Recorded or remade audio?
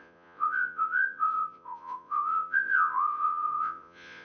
remade